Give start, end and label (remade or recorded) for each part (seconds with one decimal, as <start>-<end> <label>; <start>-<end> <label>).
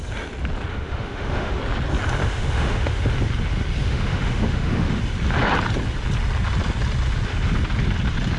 0.0-0.7 recorded; 0.7-1.6 remade; 1.6-2.2 recorded; 2.2-3.0 remade; 3.0-3.8 recorded; 3.8-5.0 remade; 5.0-8.4 recorded